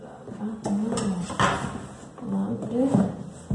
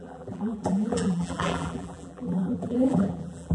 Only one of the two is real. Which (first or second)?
first